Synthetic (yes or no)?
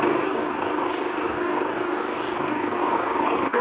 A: yes